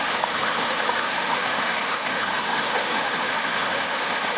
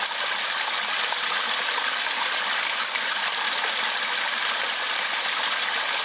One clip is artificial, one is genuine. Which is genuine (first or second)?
second